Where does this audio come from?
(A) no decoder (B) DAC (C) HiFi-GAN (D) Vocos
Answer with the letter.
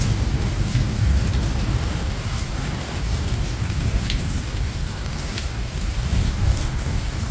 B